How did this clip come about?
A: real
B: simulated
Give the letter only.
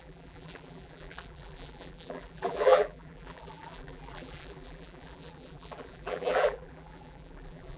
B